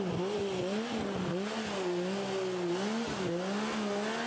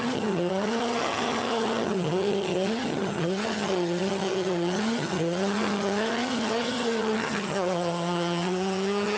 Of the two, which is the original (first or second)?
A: first